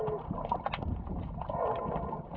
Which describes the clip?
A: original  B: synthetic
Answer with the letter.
A